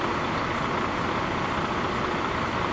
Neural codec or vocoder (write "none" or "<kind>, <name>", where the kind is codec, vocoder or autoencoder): none